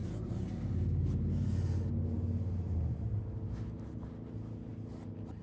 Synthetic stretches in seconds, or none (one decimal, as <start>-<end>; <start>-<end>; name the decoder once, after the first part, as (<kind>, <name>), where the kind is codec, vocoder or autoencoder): none